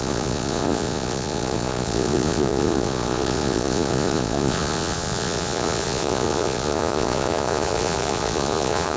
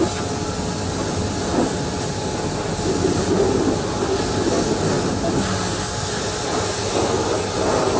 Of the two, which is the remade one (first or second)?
first